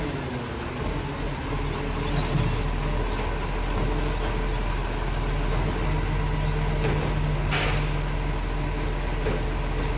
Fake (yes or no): no